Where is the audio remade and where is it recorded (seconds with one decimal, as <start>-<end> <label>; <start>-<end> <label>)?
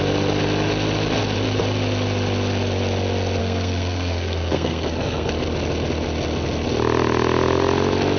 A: 0.0-3.4 recorded; 3.4-5.3 remade; 5.3-8.2 recorded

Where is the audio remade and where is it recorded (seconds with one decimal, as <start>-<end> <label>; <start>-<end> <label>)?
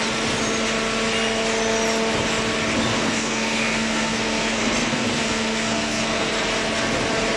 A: 0.0-2.9 recorded; 2.9-6.3 remade; 6.3-7.4 recorded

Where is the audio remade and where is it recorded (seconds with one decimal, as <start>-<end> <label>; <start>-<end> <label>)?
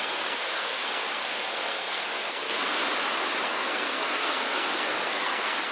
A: 0.0-2.8 remade; 2.8-3.4 recorded; 3.4-5.7 remade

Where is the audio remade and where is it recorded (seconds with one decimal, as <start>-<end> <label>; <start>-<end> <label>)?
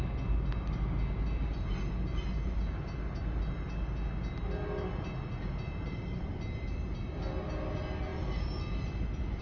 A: 0.0-9.4 recorded